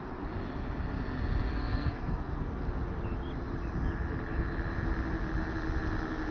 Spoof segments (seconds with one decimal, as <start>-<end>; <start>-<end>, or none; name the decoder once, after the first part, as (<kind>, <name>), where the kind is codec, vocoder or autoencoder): 1.5-2.6 (codec, SNAC)